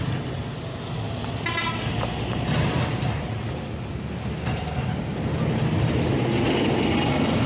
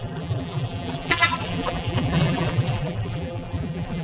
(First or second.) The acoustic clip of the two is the first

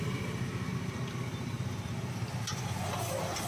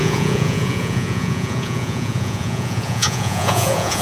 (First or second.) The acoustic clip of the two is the first